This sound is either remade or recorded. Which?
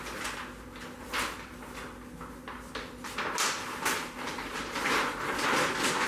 recorded